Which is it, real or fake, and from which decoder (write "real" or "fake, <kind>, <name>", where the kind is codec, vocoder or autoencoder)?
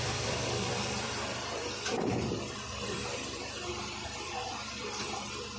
fake, vocoder, BigVGAN v2